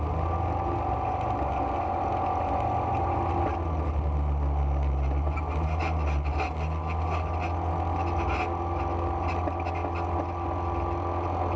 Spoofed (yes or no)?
no